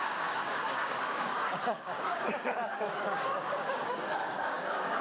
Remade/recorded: remade